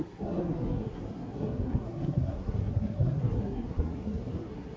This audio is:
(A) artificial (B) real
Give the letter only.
A